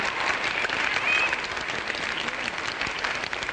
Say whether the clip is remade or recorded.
recorded